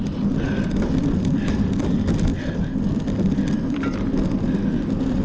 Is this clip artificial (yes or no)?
no